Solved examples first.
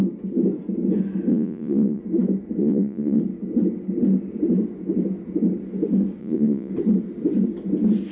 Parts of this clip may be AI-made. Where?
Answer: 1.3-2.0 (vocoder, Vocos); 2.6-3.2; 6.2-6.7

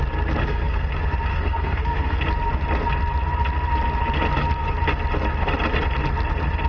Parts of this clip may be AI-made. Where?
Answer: 0.4-0.9 (codec, SNAC); 1.3-2.2

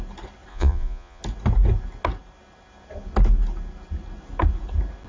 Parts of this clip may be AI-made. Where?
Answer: 0.5-1.2 (vocoder, Vocos)

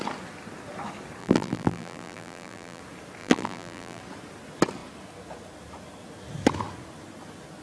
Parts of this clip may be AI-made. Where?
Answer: 1.2-2.8 (vocoder, BigVGAN v2); 3.2-4.0

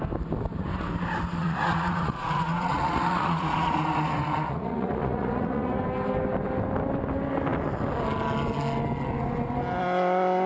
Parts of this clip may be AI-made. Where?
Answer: 1.4-5.8 (vocoder, Vocos)

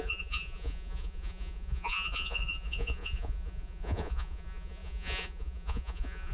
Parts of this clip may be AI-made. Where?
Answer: 0.0-6.3 (vocoder, Vocos)

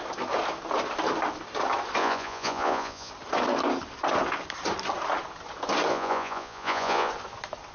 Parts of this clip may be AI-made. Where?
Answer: 2.0-3.1 (vocoder, Vocos); 5.9-7.1

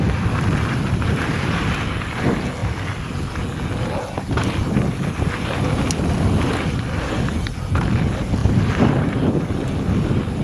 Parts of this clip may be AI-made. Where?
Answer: none